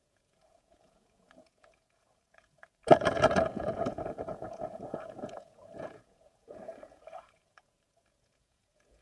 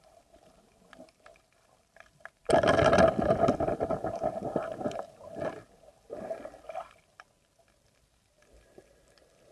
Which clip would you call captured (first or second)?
second